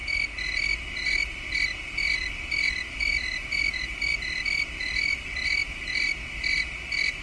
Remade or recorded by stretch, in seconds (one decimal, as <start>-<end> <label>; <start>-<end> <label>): 0.0-7.2 recorded